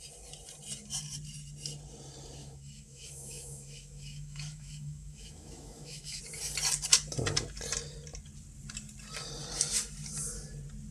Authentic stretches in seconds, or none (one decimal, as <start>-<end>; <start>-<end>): 0.0-2.4; 6.2-10.9